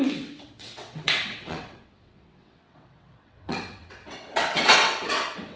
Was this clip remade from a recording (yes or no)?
yes